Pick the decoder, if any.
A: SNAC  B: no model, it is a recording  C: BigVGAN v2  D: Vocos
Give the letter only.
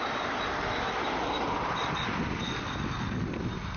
B